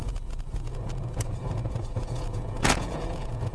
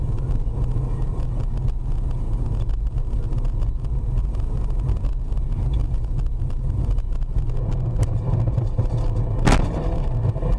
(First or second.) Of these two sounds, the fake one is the first